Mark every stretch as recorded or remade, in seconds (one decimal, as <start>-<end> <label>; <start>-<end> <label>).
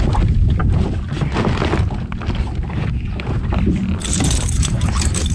0.0-5.3 recorded